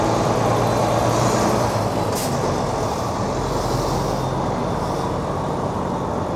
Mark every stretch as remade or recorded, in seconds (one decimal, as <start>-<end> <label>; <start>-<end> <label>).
0.0-6.4 recorded

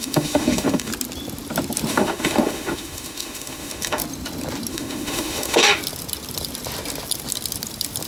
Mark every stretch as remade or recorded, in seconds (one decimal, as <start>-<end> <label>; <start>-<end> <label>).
0.0-0.9 remade; 0.9-1.9 recorded; 1.9-4.0 remade; 4.0-4.7 recorded; 4.7-5.8 remade; 5.8-8.1 recorded

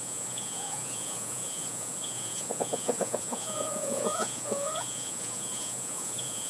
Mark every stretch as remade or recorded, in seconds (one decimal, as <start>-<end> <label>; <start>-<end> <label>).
0.0-6.5 remade

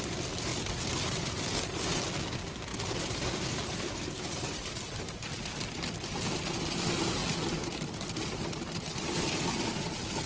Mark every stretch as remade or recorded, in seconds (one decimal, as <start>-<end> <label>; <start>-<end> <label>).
0.0-2.7 recorded; 2.7-5.0 remade; 5.0-10.3 recorded

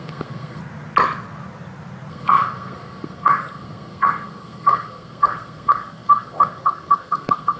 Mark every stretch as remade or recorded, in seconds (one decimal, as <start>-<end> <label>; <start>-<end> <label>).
0.0-0.6 remade; 0.6-2.1 recorded; 2.1-7.6 remade

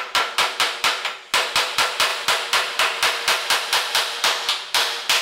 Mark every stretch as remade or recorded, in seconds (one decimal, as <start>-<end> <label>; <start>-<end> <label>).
0.0-5.2 recorded

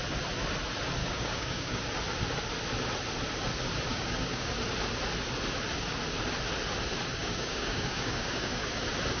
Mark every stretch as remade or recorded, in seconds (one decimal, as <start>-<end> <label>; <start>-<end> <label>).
0.0-1.0 recorded; 1.0-1.8 remade; 1.8-3.9 recorded; 3.9-4.5 remade; 4.5-7.2 recorded; 7.2-8.7 remade; 8.7-9.2 recorded